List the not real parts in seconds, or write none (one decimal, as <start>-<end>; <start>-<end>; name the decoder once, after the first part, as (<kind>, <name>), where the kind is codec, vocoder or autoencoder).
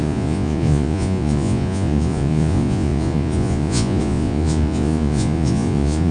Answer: 0.0-6.1 (vocoder, Vocos)